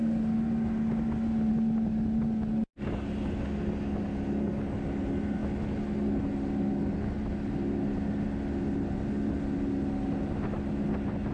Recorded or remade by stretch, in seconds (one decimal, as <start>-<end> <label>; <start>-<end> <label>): 0.0-11.3 recorded